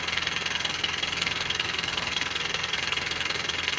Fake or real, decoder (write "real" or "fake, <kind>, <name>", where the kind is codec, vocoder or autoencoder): fake, codec, SNAC